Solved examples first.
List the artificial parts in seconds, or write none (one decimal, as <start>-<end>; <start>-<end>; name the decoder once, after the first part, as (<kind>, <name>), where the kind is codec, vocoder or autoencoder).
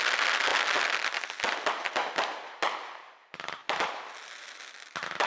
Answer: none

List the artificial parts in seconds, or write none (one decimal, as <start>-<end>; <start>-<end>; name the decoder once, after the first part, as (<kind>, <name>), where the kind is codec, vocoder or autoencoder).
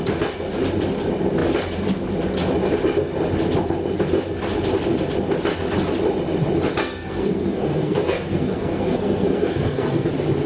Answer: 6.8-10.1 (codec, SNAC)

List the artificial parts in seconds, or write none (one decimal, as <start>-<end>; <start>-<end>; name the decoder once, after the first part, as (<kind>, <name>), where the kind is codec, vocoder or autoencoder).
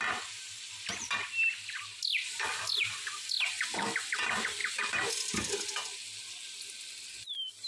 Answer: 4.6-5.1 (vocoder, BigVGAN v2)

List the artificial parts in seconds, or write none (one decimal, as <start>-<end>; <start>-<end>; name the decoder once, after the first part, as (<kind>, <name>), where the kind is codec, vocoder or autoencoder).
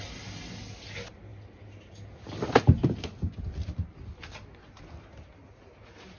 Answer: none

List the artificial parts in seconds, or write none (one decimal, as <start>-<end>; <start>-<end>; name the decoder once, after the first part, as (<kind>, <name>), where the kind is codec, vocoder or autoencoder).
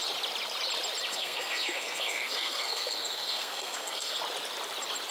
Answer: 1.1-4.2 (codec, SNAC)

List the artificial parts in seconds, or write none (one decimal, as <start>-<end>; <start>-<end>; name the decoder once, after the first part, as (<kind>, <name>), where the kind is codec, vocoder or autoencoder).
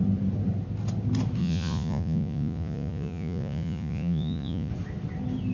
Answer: 1.4-4.7 (vocoder, Vocos)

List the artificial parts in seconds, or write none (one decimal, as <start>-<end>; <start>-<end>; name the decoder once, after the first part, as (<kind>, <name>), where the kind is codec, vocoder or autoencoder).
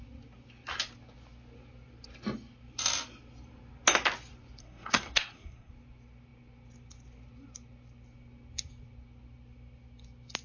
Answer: 4.6-5.7 (codec, SNAC)